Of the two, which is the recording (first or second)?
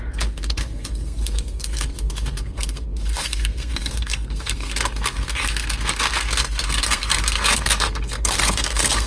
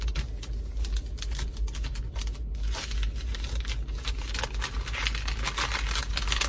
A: second